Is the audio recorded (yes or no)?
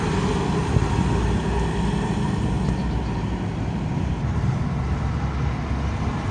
yes